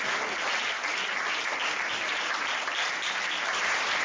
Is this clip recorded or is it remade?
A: recorded